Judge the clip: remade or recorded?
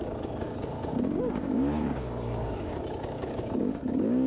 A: remade